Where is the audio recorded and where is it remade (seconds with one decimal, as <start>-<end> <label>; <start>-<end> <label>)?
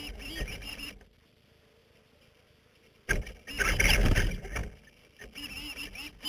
0.0-6.3 recorded